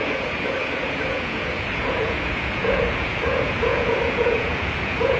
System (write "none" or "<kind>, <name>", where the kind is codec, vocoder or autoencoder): vocoder, Vocos